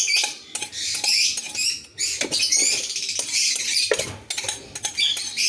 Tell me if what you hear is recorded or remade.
recorded